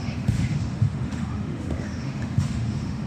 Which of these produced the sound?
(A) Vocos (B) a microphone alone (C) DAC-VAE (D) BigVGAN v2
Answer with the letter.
C